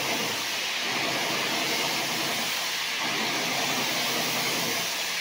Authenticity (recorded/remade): recorded